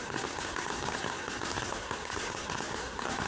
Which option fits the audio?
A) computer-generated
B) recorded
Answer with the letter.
A